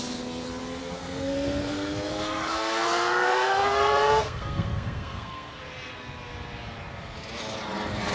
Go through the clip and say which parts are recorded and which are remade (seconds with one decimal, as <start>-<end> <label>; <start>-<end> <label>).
0.0-0.8 recorded; 0.8-5.6 remade; 5.6-8.1 recorded

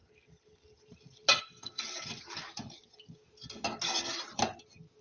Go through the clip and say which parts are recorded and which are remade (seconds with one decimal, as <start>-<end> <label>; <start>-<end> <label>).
0.0-1.4 recorded; 1.4-1.8 remade; 1.8-5.0 recorded

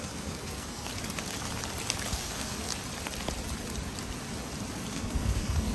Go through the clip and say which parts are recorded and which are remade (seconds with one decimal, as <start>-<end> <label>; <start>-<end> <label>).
0.0-0.9 remade; 0.9-2.1 recorded; 2.1-2.7 remade; 2.7-4.9 recorded; 4.9-5.7 remade

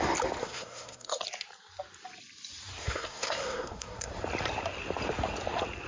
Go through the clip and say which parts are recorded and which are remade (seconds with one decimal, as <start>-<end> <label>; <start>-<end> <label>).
0.0-0.4 recorded; 0.4-1.2 remade; 1.2-2.8 recorded; 2.8-4.1 remade; 4.1-5.9 recorded

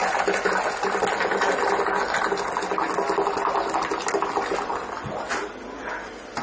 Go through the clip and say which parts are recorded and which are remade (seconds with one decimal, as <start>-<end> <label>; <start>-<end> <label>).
0.0-6.4 recorded